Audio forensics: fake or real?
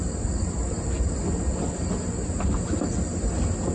real